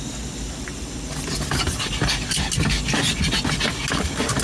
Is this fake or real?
real